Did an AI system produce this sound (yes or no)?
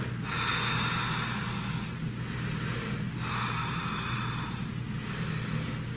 no